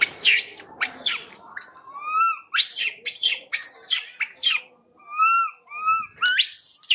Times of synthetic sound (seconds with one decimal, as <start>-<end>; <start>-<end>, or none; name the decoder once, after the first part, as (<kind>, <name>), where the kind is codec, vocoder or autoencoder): none